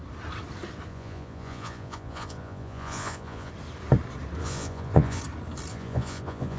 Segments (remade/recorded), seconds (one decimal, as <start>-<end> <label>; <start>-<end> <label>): 0.0-0.9 recorded; 0.9-3.5 remade; 3.5-4.4 recorded; 4.4-5.2 remade; 5.2-5.7 recorded; 5.7-6.6 remade